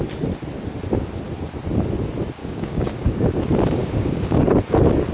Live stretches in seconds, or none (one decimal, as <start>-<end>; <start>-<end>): 0.0-2.4; 3.4-3.8; 4.4-5.1